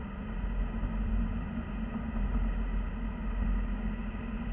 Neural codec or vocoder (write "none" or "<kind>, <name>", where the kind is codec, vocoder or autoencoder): none